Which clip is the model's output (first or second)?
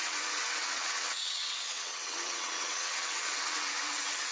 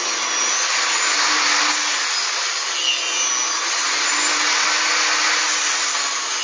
first